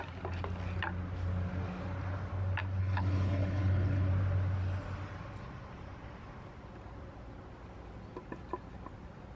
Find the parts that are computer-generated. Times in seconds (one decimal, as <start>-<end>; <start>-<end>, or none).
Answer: 2.8-4.1

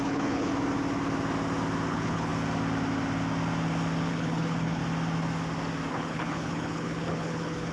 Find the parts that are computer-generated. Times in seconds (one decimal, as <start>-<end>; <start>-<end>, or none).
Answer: 0.0-0.5; 1.9-2.3; 4.1-4.8; 5.9-7.7

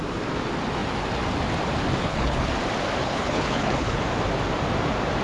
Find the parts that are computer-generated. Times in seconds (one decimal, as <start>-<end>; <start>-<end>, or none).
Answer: 2.0-2.5; 3.0-4.0

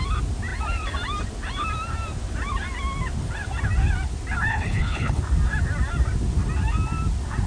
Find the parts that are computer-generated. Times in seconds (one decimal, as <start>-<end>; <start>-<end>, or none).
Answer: 4.5-5.2

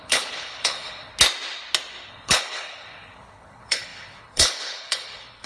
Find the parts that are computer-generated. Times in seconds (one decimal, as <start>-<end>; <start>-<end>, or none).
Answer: 0.0-1.1; 2.1-5.5

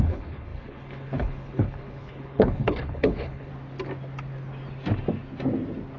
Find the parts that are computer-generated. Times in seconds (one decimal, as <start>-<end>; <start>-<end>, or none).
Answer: 0.0-3.5

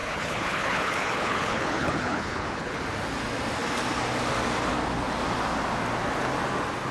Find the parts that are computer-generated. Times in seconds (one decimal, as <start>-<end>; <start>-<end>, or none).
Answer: 0.0-2.8

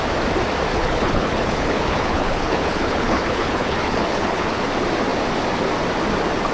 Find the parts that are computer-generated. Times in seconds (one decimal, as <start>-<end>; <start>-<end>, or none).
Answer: 0.7-4.6